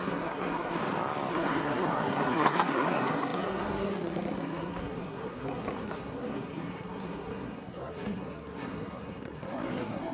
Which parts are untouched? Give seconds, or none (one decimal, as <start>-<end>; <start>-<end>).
0.8-1.3